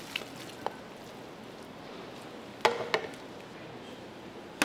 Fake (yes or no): no